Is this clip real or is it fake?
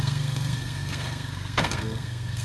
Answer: fake